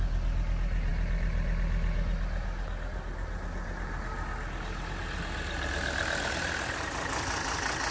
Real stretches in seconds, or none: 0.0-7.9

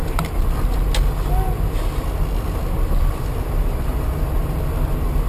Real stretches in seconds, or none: 0.0-5.3

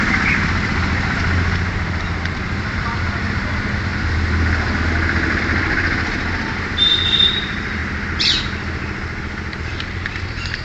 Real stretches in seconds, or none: 3.9-5.4; 7.8-9.6

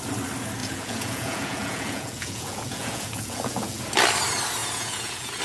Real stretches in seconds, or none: 0.0-0.6; 3.8-4.6

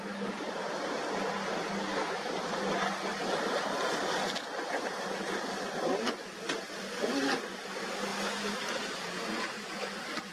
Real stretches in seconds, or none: 0.0-10.3